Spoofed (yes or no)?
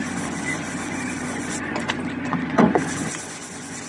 yes